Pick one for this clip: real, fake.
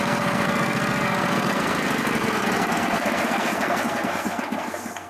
fake